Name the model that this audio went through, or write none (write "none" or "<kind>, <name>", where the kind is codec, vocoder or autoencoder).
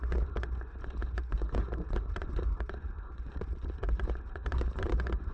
vocoder, Vocos